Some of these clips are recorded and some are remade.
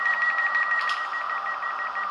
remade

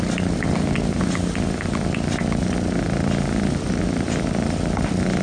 recorded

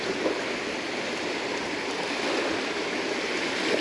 recorded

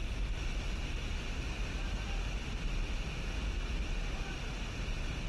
recorded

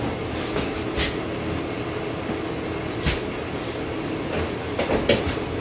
recorded